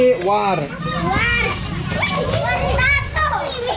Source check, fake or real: real